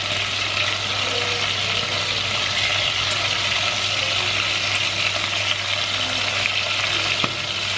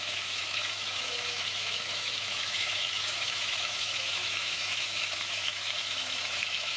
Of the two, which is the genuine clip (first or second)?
first